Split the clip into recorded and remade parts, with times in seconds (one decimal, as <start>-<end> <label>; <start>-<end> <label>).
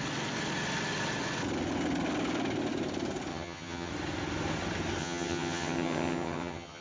0.0-3.3 recorded; 3.3-3.9 remade; 3.9-5.0 recorded; 5.0-6.8 remade